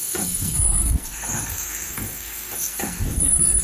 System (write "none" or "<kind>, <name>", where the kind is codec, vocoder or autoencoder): codec, SNAC